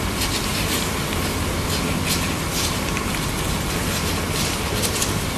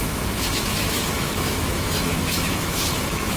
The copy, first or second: second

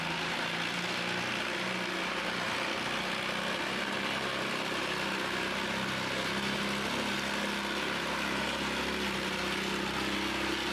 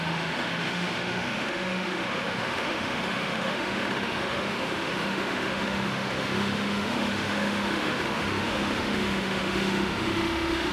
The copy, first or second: second